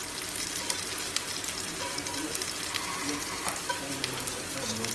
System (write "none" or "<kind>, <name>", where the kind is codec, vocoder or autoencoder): none